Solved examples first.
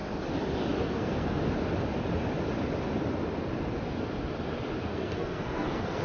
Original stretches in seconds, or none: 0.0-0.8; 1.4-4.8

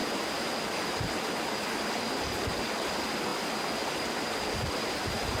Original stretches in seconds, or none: 0.0-5.4

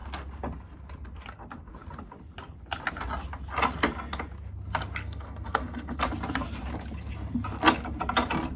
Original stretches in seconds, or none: 0.0-5.0; 6.0-8.6

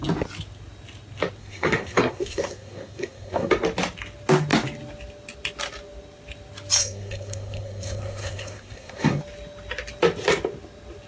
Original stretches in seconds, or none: 0.0-1.4; 3.5-6.8; 9.2-11.1

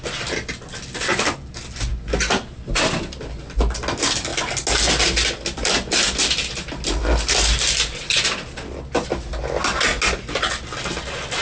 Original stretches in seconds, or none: 0.0-11.4